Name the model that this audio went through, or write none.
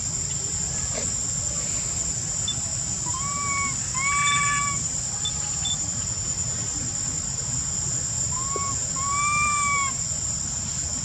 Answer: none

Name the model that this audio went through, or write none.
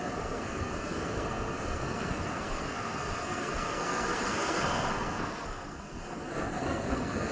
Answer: codec, SNAC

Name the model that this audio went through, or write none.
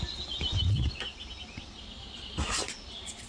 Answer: none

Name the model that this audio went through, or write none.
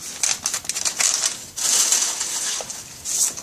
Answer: none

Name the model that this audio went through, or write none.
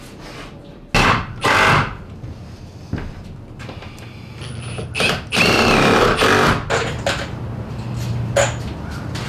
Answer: none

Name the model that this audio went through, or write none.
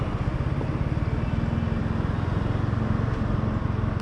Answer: none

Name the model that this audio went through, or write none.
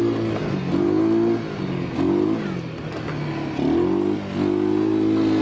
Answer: none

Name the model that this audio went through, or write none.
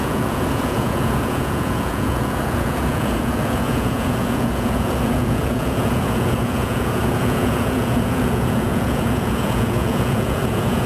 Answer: vocoder, Vocos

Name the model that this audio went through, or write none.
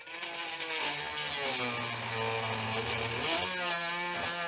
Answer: none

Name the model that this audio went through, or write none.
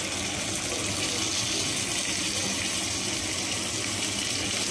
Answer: none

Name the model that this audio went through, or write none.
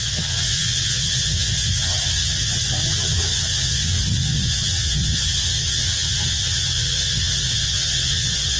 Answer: vocoder, WaveNeXt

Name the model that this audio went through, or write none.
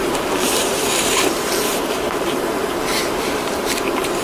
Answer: vocoder, BigVGAN v2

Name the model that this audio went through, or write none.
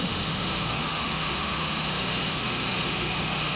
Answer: autoencoder, DAC-VAE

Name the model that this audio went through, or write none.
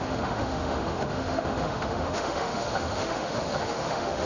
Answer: autoencoder, DAC-VAE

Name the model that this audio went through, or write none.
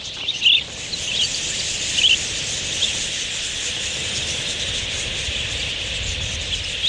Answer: none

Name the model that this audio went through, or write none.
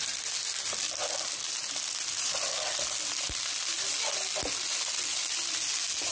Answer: none